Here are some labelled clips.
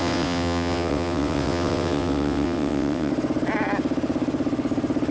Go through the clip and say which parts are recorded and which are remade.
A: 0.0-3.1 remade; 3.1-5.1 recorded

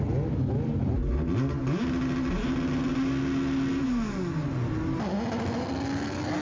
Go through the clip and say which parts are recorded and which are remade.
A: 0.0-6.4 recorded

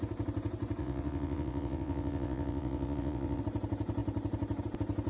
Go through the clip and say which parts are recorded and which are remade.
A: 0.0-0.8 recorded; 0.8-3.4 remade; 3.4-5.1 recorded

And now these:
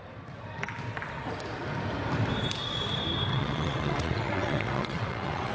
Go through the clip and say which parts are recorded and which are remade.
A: 0.0-3.3 recorded; 3.3-5.5 remade

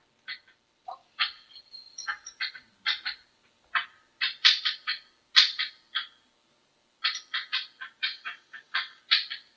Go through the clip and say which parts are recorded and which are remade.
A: 0.0-8.1 recorded; 8.1-9.0 remade; 9.0-9.6 recorded

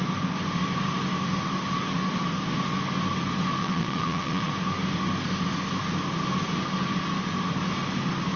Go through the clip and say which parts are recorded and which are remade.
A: 0.0-3.6 recorded; 3.6-4.5 remade; 4.5-8.4 recorded

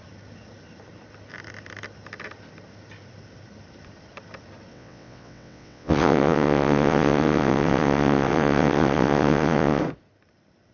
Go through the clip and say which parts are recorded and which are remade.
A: 0.0-4.7 recorded; 4.7-9.8 remade; 9.8-10.7 recorded